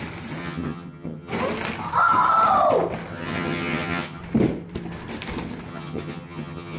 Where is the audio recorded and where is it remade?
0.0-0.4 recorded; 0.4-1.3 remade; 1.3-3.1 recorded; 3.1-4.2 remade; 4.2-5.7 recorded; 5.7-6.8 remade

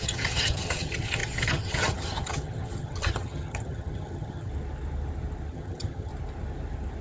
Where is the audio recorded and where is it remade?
0.0-4.5 remade; 4.5-5.5 recorded; 5.5-6.1 remade; 6.1-7.0 recorded

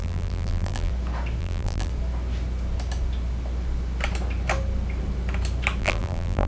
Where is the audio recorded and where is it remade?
0.0-0.9 remade; 0.9-1.4 recorded; 1.4-1.9 remade; 1.9-5.8 recorded; 5.8-6.5 remade